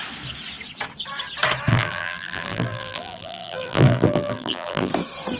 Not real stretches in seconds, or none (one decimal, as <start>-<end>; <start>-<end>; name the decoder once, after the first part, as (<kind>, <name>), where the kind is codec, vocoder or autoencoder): 1.7-4.9 (vocoder, BigVGAN v2)